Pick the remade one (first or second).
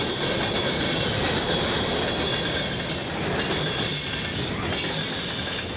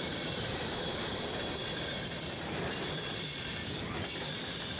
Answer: second